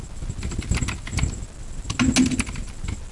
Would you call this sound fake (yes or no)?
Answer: no